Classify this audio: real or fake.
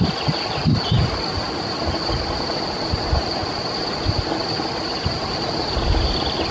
real